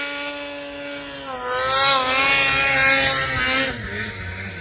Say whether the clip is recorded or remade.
recorded